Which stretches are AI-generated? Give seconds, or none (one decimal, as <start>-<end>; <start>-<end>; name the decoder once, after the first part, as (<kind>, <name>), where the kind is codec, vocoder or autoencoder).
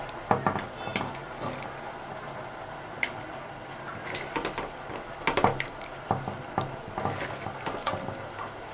none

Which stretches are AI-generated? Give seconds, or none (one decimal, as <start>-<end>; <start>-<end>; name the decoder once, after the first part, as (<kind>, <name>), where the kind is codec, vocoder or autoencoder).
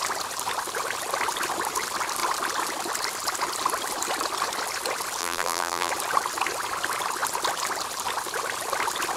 5.2-5.9 (vocoder, BigVGAN v2)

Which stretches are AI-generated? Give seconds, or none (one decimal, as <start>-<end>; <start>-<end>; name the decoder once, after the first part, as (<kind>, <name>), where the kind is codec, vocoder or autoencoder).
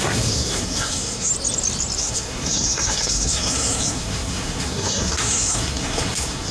0.0-1.3 (codec, SNAC); 2.0-6.5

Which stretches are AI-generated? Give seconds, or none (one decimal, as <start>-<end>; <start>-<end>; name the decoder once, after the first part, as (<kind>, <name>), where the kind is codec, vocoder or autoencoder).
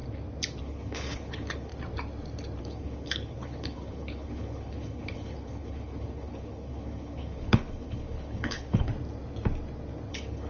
0.6-1.7 (codec, HILCodec); 2.6-8.9; 10.1-10.5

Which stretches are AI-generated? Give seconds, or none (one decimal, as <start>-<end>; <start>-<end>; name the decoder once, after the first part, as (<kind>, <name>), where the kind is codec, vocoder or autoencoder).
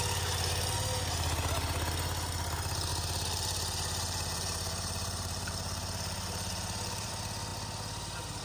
2.9-7.1 (vocoder, BigVGAN v2)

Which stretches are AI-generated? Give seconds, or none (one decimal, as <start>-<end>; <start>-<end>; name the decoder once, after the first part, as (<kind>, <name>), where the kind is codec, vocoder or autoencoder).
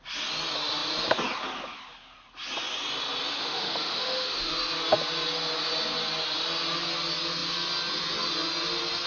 3.3-4.5 (autoencoder, DAC-VAE)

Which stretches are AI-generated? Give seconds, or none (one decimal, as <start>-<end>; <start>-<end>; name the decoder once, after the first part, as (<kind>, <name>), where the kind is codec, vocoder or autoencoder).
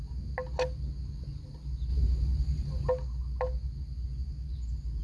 1.9-2.9 (vocoder, BigVGAN v2); 4.2-5.0